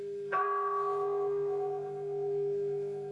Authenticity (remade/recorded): remade